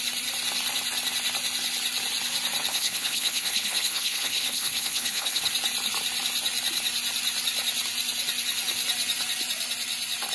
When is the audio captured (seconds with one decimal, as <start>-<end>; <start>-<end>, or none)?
0.0-2.7; 5.5-10.3